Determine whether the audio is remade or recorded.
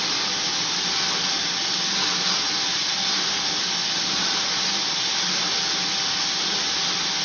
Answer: recorded